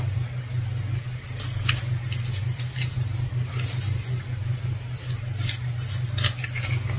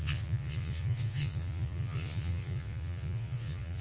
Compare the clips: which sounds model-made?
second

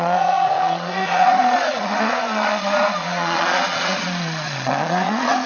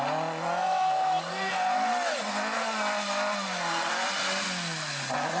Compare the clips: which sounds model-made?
first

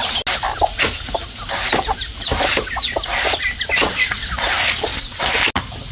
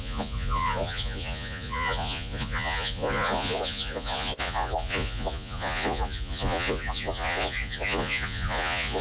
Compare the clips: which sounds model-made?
second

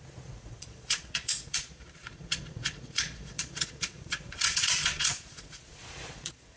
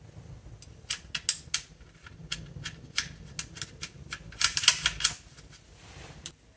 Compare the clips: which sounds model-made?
first